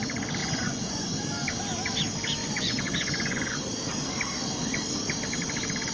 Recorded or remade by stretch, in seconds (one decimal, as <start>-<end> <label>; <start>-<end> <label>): 0.0-0.4 recorded; 0.4-1.2 remade; 1.2-2.4 recorded; 2.4-3.6 remade; 3.6-5.9 recorded